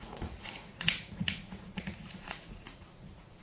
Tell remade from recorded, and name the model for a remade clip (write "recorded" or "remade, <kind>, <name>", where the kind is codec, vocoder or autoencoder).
remade, vocoder, Vocos